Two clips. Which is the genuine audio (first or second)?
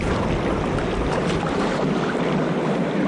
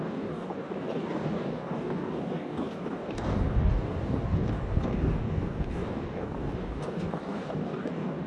first